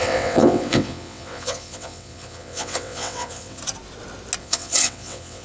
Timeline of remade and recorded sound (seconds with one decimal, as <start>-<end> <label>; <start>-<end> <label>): 0.0-3.6 remade; 3.6-4.4 recorded; 4.4-5.4 remade